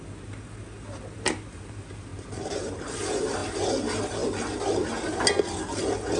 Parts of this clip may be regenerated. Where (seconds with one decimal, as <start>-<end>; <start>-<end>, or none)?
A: none